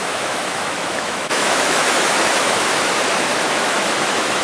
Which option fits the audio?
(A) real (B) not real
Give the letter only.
B